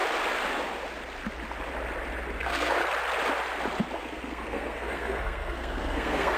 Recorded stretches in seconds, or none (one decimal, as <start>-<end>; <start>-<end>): 0.0-2.4; 2.8-4.0